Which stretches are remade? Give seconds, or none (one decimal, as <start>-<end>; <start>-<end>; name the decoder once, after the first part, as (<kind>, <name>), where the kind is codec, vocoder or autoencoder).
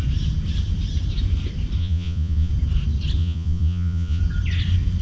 1.8-2.5 (vocoder, Vocos); 3.2-4.2